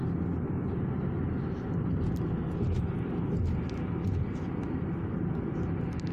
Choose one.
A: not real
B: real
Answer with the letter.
B